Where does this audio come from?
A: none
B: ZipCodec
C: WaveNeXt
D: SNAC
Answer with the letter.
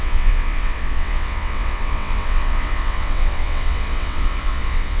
C